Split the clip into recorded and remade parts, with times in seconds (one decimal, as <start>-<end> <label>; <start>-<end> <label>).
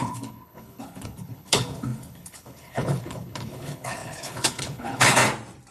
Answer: 0.0-5.2 remade; 5.2-5.7 recorded